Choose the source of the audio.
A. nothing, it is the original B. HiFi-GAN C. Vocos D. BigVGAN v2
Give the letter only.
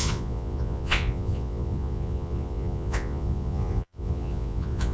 C